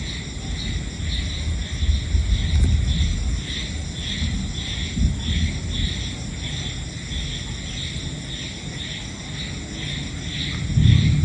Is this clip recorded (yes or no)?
yes